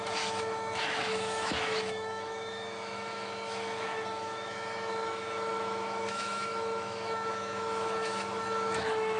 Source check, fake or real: fake